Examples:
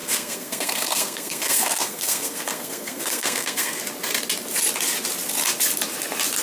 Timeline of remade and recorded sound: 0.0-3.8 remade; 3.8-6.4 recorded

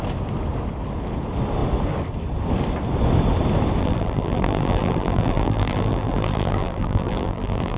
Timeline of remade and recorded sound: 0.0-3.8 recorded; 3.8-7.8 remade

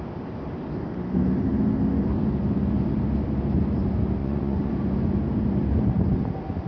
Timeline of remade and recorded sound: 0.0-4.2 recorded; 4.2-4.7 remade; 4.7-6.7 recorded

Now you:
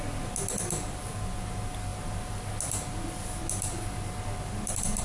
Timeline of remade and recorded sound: 0.0-5.0 recorded

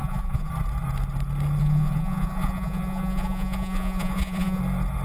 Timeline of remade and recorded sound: 0.0-0.5 remade; 0.5-1.6 recorded; 1.6-4.6 remade; 4.6-5.0 recorded

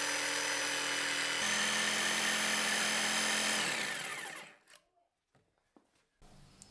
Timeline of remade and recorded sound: 0.0-6.7 recorded